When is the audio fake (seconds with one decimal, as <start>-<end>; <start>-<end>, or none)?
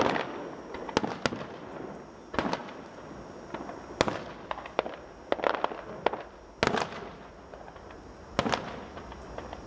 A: none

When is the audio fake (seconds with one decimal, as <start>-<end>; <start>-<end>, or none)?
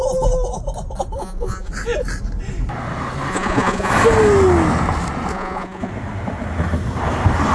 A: 1.2-1.7; 3.3-3.9; 5.3-5.9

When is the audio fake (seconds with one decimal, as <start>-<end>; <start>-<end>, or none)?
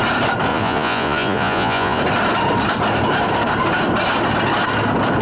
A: 0.5-2.0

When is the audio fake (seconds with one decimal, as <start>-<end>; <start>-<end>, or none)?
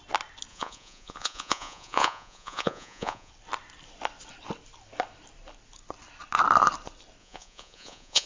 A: 0.5-3.3; 7.2-8.3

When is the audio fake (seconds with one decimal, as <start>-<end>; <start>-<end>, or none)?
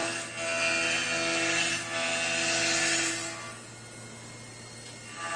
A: none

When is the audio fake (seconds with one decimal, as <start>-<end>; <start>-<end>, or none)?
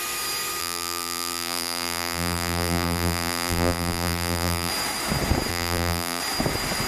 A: 0.6-4.7; 5.5-6.2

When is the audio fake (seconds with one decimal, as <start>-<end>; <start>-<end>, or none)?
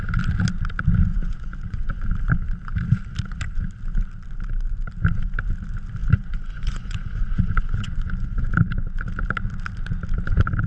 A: 1.1-2.0; 6.0-8.5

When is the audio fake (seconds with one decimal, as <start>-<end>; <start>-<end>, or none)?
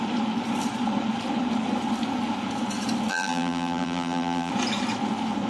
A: 3.1-4.5